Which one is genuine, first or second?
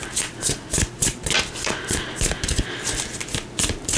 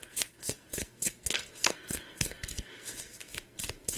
first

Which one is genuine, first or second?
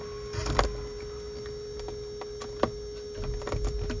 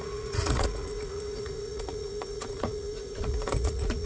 first